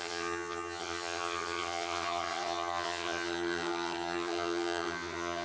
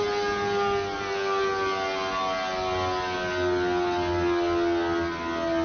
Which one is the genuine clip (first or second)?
second